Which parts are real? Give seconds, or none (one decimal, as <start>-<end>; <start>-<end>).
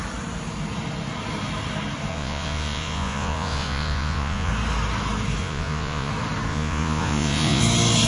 0.0-2.1; 4.5-5.4; 6.1-6.5; 7.6-8.1